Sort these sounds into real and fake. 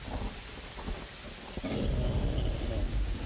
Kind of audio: real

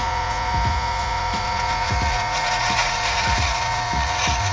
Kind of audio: fake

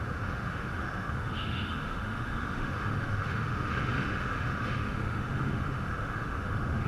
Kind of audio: fake